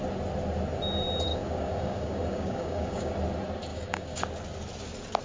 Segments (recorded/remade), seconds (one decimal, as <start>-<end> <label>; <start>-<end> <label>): 0.0-1.3 recorded; 1.3-3.1 remade; 3.1-3.7 recorded; 3.7-4.2 remade; 4.2-5.2 recorded